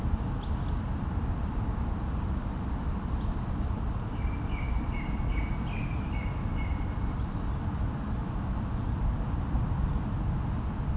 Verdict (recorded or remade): recorded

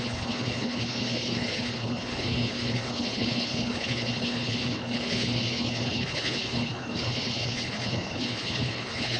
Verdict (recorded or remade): remade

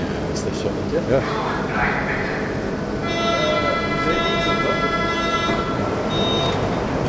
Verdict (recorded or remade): recorded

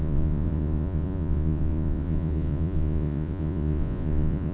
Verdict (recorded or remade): remade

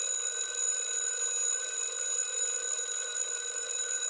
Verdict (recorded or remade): recorded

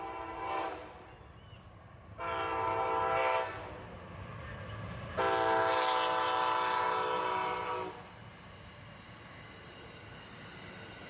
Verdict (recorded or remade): recorded